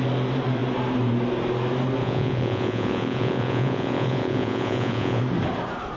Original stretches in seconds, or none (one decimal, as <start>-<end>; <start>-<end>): 0.0-2.0; 5.2-6.0